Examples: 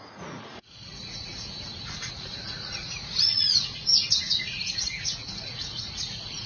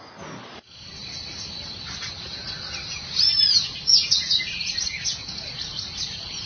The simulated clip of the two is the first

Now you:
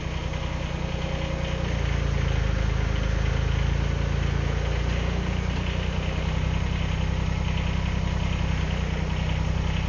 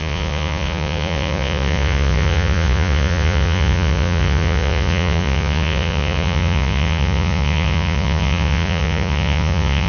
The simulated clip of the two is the second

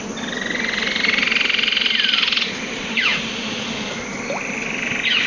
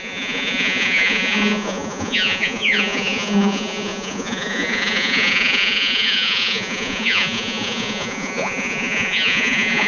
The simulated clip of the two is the second